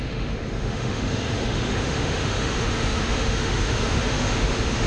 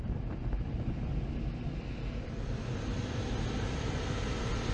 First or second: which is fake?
first